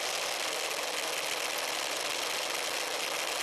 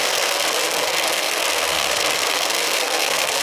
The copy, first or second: second